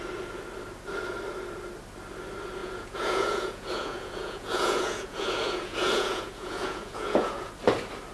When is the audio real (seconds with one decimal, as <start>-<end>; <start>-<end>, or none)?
0.0-2.6; 7.5-8.1